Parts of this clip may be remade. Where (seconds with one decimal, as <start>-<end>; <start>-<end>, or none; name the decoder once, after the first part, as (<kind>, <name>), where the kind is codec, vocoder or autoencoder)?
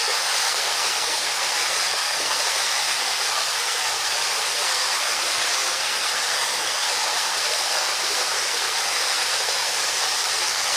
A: 0.0-10.8 (codec, SNAC)